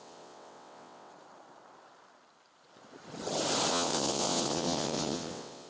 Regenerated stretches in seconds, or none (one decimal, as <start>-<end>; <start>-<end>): 0.0-1.1; 3.7-5.7